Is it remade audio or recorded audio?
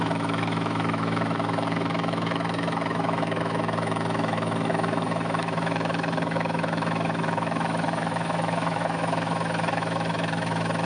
remade